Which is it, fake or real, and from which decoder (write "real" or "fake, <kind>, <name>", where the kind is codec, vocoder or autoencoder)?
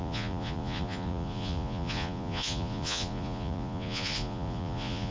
fake, vocoder, Vocos